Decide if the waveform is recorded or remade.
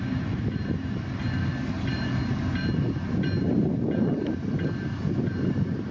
recorded